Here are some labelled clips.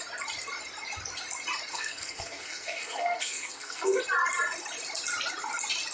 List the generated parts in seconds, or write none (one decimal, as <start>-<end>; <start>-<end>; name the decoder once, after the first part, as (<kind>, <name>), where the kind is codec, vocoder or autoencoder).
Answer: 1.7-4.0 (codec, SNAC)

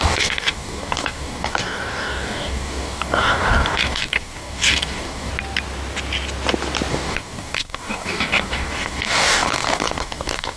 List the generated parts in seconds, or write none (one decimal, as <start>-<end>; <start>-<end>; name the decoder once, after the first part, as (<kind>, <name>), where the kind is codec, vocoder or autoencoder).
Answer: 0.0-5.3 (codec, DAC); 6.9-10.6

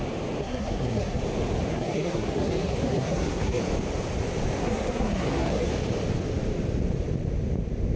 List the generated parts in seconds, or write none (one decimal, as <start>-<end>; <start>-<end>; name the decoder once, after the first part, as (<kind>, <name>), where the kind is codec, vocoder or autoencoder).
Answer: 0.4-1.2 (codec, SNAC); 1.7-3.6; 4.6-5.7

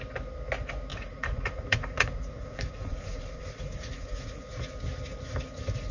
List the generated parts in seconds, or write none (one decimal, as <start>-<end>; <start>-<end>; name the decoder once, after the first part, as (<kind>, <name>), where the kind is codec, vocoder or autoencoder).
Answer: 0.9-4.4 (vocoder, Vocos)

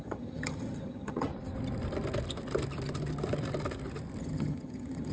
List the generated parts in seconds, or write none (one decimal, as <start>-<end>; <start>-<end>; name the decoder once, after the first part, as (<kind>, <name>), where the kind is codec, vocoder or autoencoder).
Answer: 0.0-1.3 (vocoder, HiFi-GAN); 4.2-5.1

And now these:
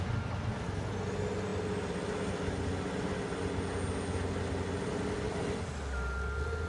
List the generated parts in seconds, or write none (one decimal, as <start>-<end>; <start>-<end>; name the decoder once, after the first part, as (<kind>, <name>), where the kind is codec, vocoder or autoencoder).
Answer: none